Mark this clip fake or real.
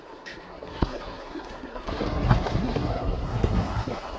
fake